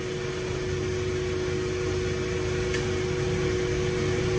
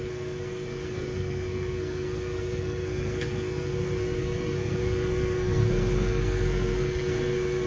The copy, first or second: second